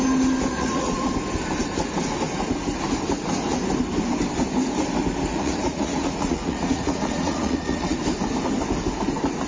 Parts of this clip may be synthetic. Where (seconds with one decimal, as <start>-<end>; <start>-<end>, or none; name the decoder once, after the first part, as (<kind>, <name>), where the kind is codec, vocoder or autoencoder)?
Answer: 0.5-1.1 (vocoder, Vocos); 5.3-8.0

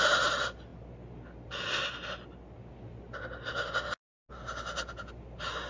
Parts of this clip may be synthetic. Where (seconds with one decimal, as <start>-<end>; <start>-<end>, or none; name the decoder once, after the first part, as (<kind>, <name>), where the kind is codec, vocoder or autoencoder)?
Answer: none

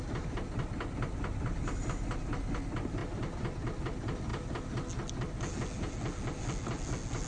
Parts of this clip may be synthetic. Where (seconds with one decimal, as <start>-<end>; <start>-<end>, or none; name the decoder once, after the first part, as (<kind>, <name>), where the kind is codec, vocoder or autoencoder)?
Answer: none

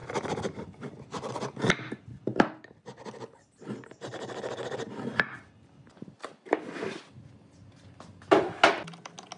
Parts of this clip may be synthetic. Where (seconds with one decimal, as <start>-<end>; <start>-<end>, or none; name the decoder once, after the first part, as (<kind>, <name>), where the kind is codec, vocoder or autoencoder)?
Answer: none

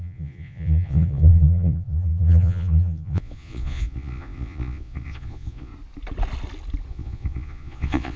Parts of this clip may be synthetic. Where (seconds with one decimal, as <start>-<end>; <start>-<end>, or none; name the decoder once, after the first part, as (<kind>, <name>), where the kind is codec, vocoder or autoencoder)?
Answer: 0.0-5.7 (vocoder, Vocos); 6.9-8.2

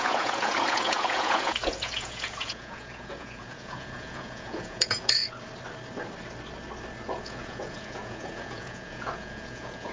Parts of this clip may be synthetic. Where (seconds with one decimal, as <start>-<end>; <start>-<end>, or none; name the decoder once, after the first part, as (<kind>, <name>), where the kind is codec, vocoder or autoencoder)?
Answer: 0.0-5.2 (vocoder, Vocos); 7.2-9.9